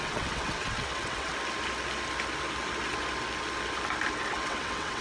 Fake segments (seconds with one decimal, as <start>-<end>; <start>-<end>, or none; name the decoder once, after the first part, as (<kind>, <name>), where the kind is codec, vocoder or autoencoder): 0.0-1.3 (vocoder, WaveNeXt); 4.3-5.0